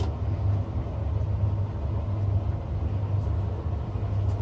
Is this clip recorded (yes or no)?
yes